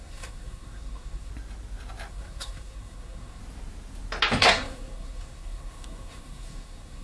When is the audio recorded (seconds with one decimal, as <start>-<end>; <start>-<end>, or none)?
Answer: 1.3-2.1; 3.4-4.4